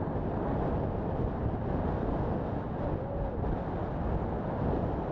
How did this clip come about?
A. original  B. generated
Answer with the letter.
A